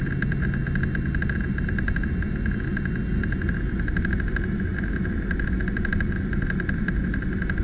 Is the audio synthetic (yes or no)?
no